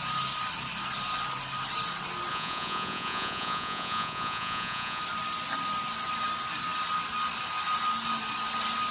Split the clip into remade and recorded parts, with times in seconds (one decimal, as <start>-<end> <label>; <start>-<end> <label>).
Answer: 0.0-2.3 recorded; 2.3-5.0 remade; 5.0-8.9 recorded